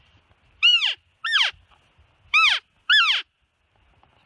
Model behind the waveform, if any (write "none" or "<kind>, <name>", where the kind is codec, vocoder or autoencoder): none